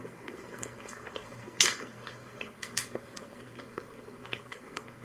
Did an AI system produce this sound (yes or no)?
yes